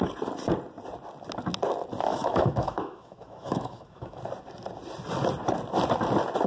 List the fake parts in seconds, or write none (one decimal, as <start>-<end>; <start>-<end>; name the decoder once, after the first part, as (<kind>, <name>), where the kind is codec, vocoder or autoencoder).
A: 2.1-4.2 (autoencoder, DAC-VAE)